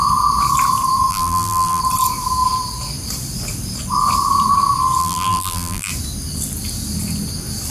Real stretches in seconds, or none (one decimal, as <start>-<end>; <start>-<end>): 0.0-1.1; 1.8-5.0; 5.9-7.7